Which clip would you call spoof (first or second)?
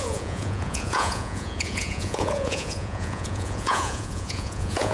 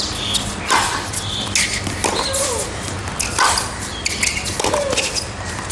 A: first